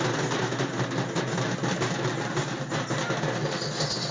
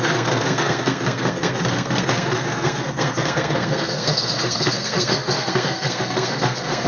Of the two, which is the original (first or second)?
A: first